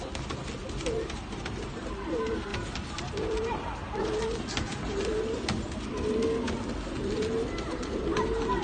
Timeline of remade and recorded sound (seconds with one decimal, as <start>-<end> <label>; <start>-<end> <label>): 0.0-8.6 recorded